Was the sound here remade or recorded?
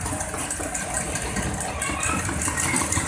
recorded